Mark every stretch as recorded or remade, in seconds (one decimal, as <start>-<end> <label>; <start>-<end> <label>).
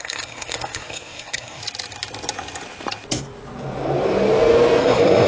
0.0-1.6 remade; 1.6-4.8 recorded; 4.8-5.3 remade